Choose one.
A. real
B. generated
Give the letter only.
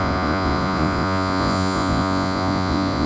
B